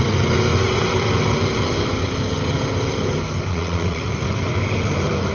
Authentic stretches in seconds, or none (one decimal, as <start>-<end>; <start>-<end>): 0.0-3.5; 4.0-5.3